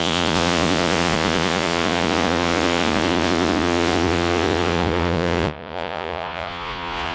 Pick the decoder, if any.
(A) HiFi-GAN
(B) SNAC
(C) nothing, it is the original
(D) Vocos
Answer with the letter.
D